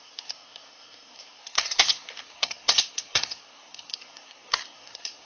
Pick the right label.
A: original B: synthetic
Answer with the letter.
B